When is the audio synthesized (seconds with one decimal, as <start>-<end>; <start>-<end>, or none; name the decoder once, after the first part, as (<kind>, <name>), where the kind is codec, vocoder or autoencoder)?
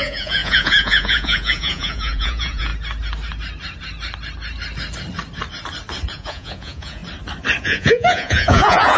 0.0-2.7 (vocoder, Vocos); 6.1-7.0; 7.6-9.0